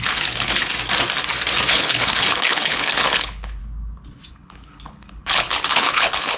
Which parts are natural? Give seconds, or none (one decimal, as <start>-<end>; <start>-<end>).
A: 0.6-1.7; 3.6-4.3